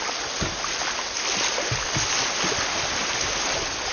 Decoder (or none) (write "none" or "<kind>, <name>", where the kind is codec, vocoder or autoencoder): none